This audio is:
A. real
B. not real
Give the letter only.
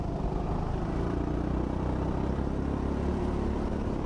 A